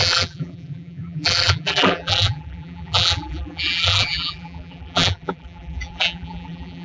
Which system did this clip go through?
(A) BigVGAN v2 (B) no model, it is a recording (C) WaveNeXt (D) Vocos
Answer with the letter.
A